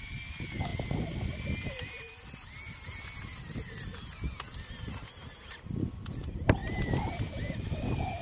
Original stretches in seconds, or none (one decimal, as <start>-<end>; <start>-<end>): 0.0-8.2